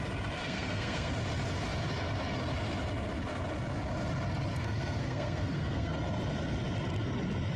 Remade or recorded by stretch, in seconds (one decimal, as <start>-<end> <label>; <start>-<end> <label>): 0.0-0.4 recorded; 0.4-1.1 remade; 1.1-4.5 recorded; 4.5-5.9 remade; 5.9-7.6 recorded